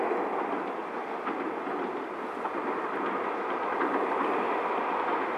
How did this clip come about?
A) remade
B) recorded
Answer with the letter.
B